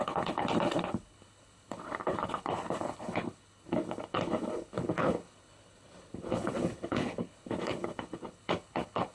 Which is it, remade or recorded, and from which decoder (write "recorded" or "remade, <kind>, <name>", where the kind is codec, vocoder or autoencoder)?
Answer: remade, codec, HILCodec